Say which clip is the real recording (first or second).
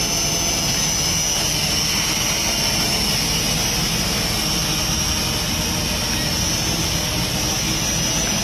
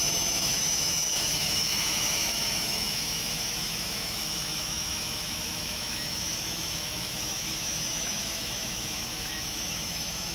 first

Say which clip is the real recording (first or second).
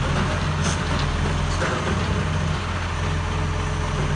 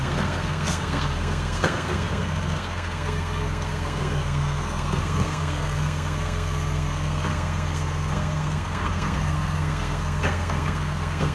first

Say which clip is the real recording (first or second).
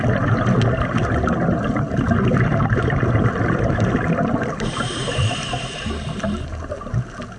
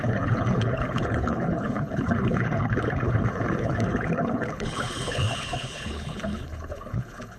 first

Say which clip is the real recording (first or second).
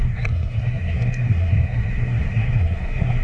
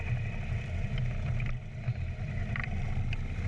second